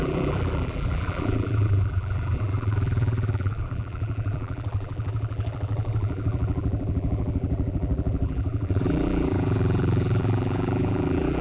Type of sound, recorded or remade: remade